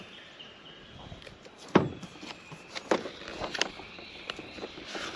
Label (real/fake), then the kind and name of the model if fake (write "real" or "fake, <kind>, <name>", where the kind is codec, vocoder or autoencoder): fake, vocoder, BigVGAN v2